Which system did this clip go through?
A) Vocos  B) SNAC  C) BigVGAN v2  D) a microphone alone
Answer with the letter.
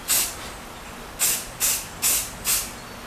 D